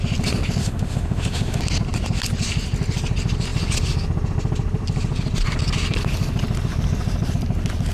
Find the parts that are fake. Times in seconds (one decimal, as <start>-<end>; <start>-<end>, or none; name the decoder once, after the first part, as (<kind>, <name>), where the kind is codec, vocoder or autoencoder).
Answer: 0.6-1.6 (autoencoder, DAC-VAE)